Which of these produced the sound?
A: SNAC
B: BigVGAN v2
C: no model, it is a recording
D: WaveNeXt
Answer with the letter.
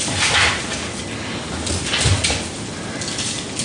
C